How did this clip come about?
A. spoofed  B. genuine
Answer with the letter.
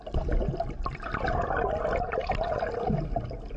B